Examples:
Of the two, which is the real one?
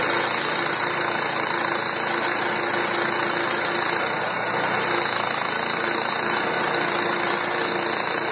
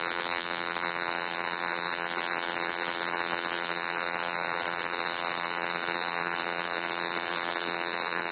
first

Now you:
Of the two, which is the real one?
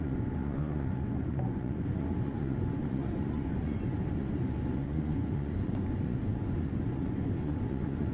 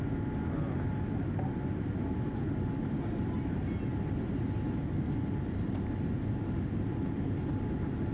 second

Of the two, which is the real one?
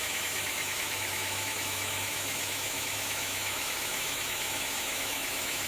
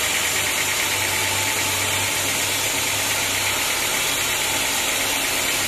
second